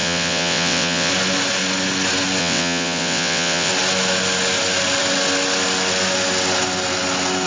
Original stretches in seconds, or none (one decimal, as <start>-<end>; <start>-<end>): 1.1-2.4; 3.7-7.5